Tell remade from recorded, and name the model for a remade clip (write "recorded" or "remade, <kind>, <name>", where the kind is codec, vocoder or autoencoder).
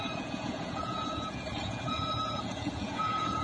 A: remade, vocoder, Vocos